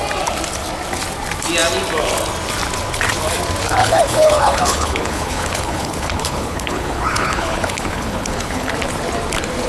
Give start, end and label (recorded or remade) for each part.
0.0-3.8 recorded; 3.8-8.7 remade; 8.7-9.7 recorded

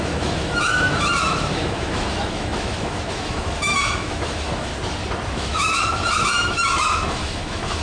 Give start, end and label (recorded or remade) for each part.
0.0-4.7 remade; 4.7-5.3 recorded; 5.3-7.8 remade

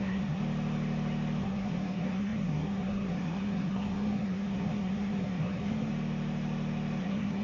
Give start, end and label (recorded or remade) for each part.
0.0-0.4 remade; 0.4-1.4 recorded; 1.4-5.9 remade; 5.9-7.0 recorded; 7.0-7.4 remade

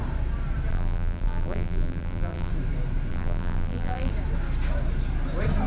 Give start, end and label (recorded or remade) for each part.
0.0-0.7 recorded; 0.7-2.5 remade; 2.5-3.1 recorded; 3.1-4.1 remade; 4.1-5.7 recorded

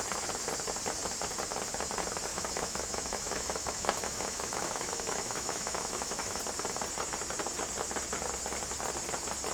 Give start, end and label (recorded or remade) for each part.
0.0-2.3 recorded; 2.3-6.4 remade; 6.4-9.5 recorded